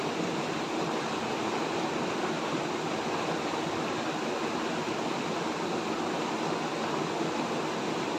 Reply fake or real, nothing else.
real